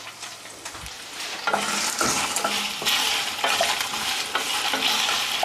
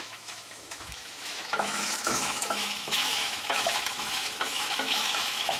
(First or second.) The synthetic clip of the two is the second